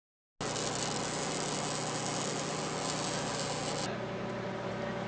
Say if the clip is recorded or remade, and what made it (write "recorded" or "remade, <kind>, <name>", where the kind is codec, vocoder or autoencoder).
recorded